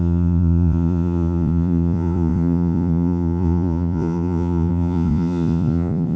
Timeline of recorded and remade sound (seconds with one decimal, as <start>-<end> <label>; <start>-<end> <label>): 0.0-6.2 remade